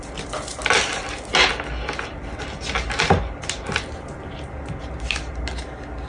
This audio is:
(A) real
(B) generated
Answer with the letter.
A